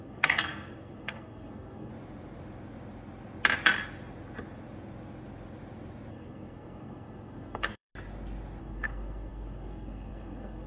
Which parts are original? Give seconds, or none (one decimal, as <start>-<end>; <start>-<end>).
1.9-6.1; 7.9-8.6